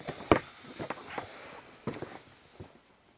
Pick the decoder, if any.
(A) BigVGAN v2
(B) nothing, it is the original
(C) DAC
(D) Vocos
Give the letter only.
B